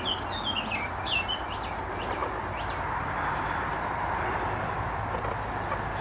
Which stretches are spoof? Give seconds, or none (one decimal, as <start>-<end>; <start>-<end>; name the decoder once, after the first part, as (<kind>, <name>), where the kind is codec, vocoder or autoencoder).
none